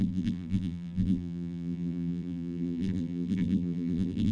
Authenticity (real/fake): fake